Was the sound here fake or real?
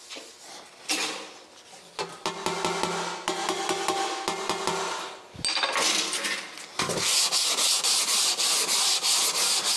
real